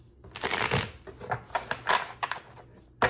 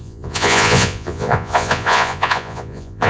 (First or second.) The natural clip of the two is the first